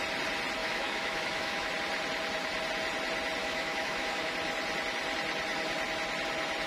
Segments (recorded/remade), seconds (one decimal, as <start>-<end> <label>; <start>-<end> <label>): 0.0-0.6 recorded; 0.6-1.7 remade; 1.7-3.4 recorded; 3.4-4.3 remade; 4.3-6.7 recorded